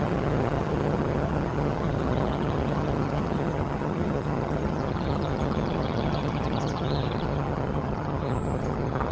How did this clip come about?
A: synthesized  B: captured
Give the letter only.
A